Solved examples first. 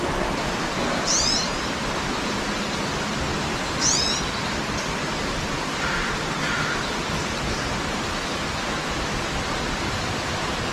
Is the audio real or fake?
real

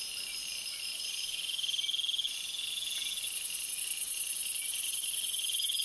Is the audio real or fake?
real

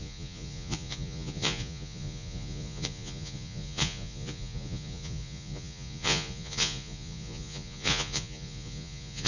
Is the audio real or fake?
fake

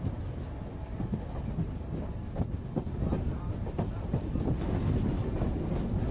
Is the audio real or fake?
real